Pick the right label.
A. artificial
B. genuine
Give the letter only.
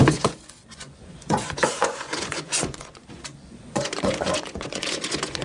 A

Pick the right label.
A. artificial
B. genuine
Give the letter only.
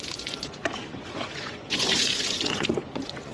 A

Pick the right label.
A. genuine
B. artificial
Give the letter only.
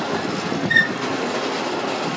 A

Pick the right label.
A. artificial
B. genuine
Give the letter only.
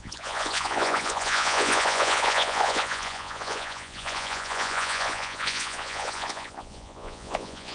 A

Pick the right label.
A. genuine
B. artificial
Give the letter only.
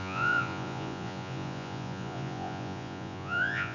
B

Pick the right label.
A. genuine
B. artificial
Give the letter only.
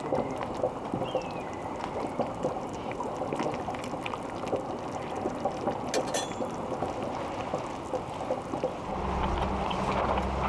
A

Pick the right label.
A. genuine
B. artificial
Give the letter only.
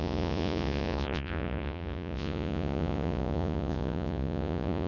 B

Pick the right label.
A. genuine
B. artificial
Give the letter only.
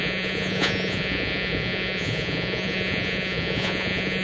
B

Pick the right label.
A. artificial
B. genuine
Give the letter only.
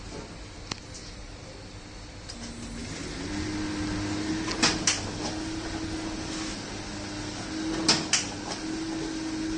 B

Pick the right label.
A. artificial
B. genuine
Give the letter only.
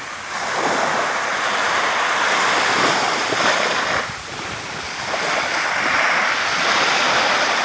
B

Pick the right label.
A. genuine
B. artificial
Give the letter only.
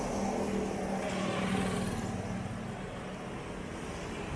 A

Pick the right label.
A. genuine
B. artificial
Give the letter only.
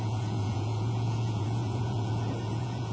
B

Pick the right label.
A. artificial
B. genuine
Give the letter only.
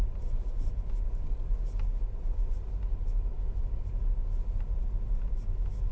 B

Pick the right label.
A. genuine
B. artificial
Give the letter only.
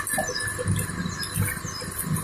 A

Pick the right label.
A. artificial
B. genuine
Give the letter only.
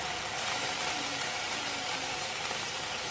B